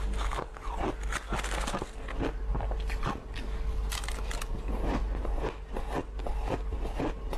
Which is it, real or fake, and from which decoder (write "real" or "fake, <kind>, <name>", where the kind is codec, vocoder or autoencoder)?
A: real